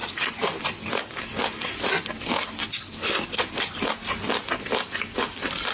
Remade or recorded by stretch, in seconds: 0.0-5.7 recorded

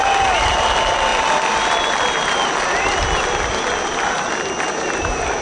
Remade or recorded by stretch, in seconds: 0.0-5.4 recorded

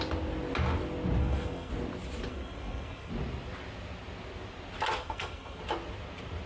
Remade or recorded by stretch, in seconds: 0.0-1.2 recorded; 1.2-1.7 remade; 1.7-2.3 recorded; 2.3-3.1 remade; 3.1-5.0 recorded; 5.0-5.6 remade; 5.6-6.5 recorded

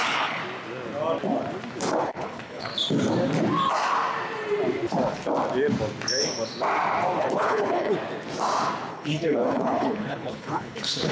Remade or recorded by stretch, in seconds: 0.0-0.4 remade; 0.4-2.0 recorded; 2.0-2.7 remade; 2.7-7.2 recorded; 7.2-7.9 remade; 7.9-8.9 recorded; 8.9-11.1 remade